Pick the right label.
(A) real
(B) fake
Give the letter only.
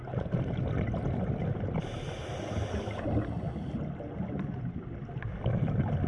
A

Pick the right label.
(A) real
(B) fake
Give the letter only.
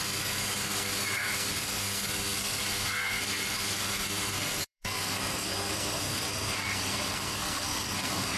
B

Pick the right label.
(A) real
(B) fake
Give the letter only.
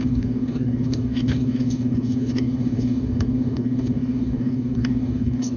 B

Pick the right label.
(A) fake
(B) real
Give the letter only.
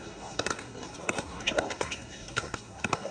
A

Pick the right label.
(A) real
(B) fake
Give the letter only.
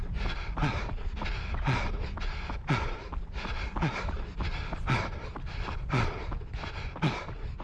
A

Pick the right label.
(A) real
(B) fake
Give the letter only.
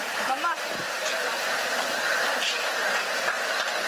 A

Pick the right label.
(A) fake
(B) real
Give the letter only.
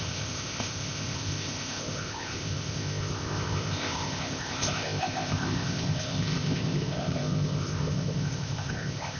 A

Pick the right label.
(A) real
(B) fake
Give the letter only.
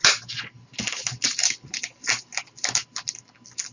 A